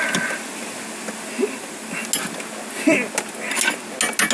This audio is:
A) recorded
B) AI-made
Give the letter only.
A